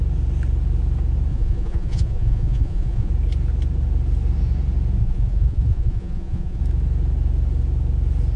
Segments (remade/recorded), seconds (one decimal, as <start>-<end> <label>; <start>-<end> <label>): 0.0-1.3 recorded; 1.3-3.1 remade; 3.1-5.0 recorded; 5.0-6.6 remade; 6.6-8.4 recorded